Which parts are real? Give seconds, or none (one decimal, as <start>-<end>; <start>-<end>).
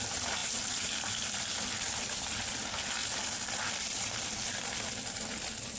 0.0-5.8